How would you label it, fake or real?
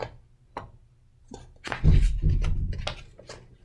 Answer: real